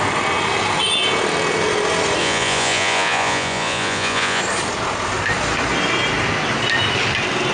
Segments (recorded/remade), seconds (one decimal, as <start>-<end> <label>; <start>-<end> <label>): 0.0-2.2 recorded; 2.2-4.4 remade; 4.4-7.5 recorded